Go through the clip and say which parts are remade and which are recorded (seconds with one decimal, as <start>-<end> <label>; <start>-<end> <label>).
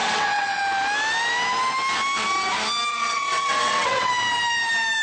0.0-0.6 remade; 0.6-2.9 recorded; 2.9-4.1 remade; 4.1-5.0 recorded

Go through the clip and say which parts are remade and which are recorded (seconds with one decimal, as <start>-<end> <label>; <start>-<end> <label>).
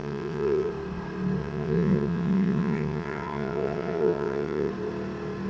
0.0-0.7 remade; 0.7-1.4 recorded; 1.4-4.7 remade; 4.7-5.5 recorded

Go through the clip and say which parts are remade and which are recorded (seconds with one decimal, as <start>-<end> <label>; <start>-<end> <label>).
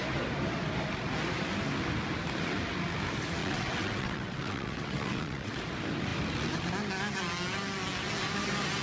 0.0-3.4 recorded; 3.4-5.6 remade; 5.6-8.8 recorded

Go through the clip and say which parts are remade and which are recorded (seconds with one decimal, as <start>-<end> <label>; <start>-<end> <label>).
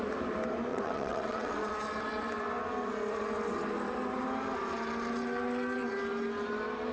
0.0-0.7 recorded; 0.7-1.7 remade; 1.7-6.9 recorded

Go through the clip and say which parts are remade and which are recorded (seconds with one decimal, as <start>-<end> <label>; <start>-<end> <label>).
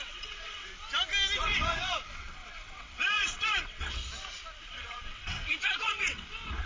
0.0-0.7 remade; 0.7-1.4 recorded; 1.4-4.0 remade; 4.0-4.6 recorded; 4.6-6.7 remade